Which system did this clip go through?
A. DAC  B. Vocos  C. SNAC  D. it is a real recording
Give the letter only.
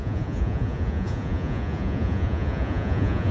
B